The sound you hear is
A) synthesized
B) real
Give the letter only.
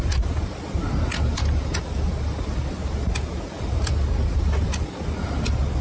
B